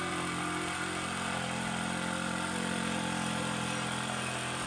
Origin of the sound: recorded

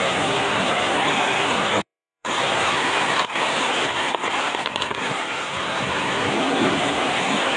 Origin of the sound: remade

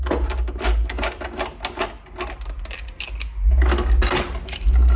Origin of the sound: recorded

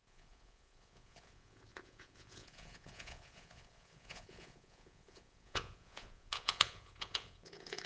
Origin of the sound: remade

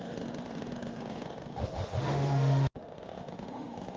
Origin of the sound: remade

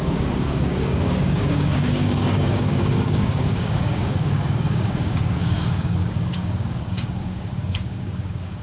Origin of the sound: remade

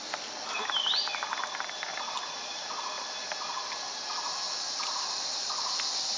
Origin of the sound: remade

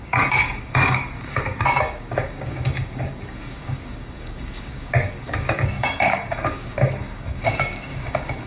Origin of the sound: remade